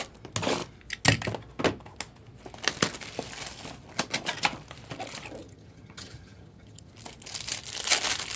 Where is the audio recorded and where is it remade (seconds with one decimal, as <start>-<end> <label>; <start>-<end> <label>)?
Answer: 0.0-5.4 recorded; 5.4-6.9 remade; 6.9-8.4 recorded